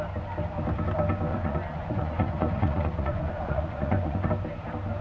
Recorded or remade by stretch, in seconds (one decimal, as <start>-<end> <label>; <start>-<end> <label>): 0.0-1.3 recorded; 1.3-4.3 remade; 4.3-5.0 recorded